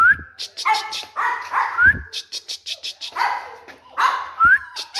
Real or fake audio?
real